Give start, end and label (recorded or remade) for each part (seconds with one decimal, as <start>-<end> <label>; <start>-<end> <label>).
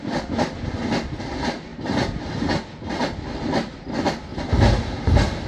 0.0-1.7 recorded; 1.7-2.5 remade; 2.5-5.5 recorded